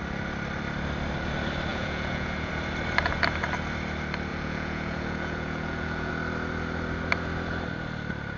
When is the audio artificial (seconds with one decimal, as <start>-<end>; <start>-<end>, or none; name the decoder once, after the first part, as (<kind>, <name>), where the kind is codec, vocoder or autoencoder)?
1.7-2.5 (vocoder, Vocos); 4.3-6.1